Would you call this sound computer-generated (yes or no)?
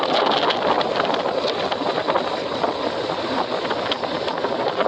no